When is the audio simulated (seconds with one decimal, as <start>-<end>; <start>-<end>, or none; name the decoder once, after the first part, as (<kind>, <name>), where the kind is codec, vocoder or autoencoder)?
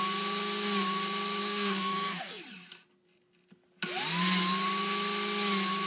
1.4-2.4 (codec, SNAC)